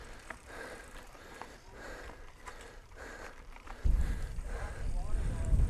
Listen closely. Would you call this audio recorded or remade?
remade